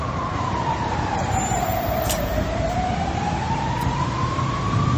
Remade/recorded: remade